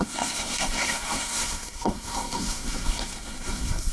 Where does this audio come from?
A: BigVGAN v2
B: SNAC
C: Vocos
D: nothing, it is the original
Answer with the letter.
B